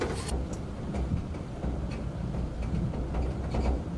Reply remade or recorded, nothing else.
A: recorded